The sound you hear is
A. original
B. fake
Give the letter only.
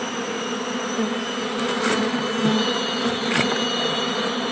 A